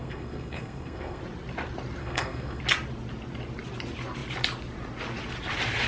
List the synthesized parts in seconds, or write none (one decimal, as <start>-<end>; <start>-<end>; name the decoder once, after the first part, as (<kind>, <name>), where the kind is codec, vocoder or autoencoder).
0.0-1.2 (codec, SNAC); 2.0-2.6